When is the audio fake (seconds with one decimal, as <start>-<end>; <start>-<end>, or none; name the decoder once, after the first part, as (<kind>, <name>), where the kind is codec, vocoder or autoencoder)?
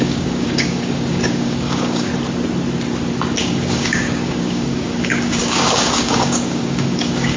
0.0-2.1 (codec, DAC); 3.4-7.4